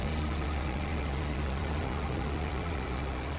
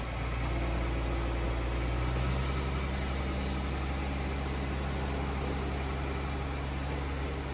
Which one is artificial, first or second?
first